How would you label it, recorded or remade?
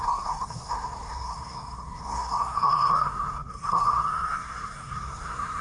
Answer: remade